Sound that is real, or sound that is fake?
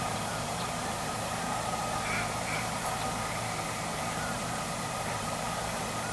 fake